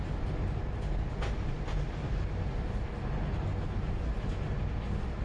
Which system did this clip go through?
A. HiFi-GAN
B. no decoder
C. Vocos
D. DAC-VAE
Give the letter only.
B